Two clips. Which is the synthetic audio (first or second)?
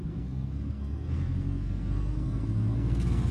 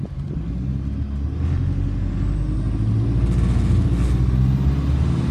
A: first